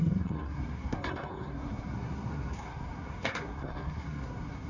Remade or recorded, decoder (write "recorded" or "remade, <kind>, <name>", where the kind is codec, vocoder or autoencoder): remade, codec, SNAC